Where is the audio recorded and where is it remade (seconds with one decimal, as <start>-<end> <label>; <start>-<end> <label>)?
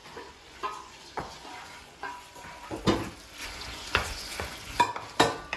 0.0-2.8 remade; 2.8-3.4 recorded; 3.4-4.8 remade; 4.8-5.6 recorded